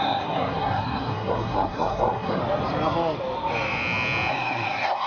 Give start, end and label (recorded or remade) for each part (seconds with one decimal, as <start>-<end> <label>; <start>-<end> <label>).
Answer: 0.0-2.4 remade; 2.4-4.3 recorded; 4.3-5.1 remade